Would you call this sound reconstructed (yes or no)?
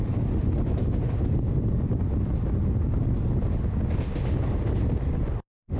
no